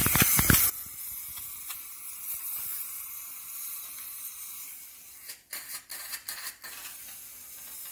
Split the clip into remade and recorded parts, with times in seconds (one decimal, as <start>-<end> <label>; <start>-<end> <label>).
0.0-7.9 recorded